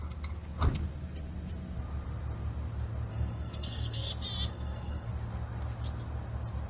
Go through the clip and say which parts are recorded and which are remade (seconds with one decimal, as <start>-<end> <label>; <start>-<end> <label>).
0.0-3.1 recorded; 3.1-4.1 remade; 4.1-4.5 recorded; 4.5-5.1 remade; 5.1-6.7 recorded